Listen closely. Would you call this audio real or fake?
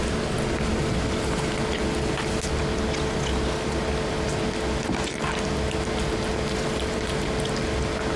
real